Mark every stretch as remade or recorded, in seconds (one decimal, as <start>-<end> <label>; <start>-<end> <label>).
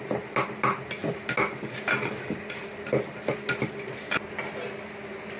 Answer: 0.0-5.4 recorded